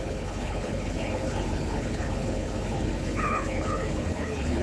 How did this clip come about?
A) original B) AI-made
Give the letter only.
B